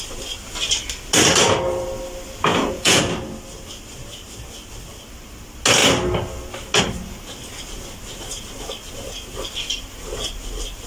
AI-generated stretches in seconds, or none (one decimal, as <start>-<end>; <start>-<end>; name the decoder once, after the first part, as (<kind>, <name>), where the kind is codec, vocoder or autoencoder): 2.5-3.0 (vocoder, Vocos)